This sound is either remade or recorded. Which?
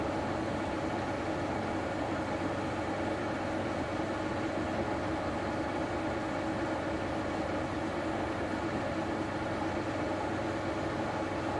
recorded